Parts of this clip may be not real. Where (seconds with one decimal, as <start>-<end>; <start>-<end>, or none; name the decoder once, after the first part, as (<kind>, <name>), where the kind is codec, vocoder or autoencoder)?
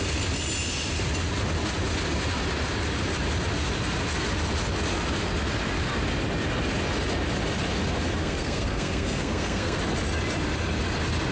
8.2-9.8 (codec, SNAC)